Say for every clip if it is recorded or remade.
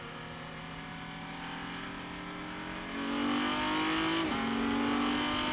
recorded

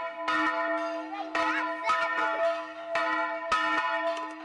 recorded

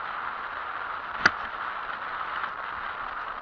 recorded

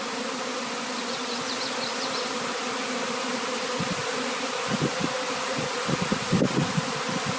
recorded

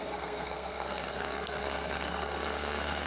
remade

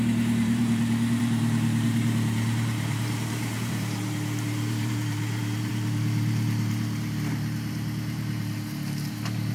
remade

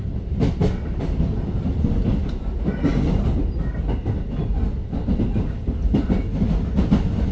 recorded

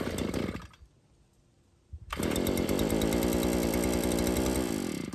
recorded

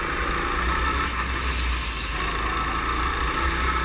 recorded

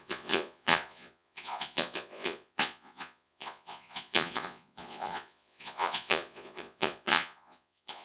remade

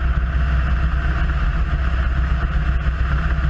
recorded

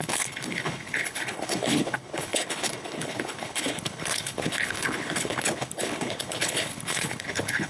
remade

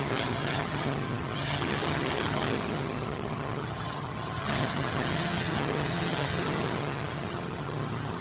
remade